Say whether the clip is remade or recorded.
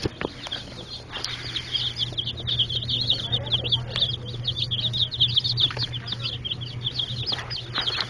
recorded